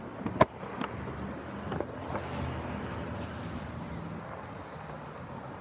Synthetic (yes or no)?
no